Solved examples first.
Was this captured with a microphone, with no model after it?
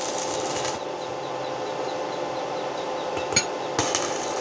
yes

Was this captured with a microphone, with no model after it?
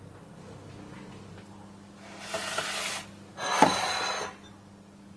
yes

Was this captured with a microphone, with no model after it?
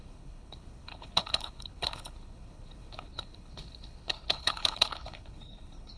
no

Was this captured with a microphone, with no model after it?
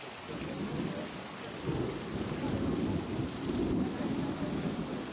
yes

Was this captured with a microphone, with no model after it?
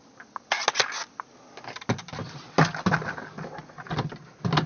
yes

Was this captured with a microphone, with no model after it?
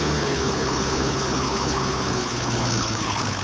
no